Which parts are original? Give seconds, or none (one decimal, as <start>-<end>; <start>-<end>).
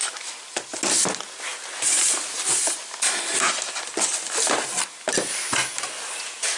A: 0.0-6.6